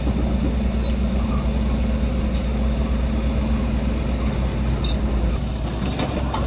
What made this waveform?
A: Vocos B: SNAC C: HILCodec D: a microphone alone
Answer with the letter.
D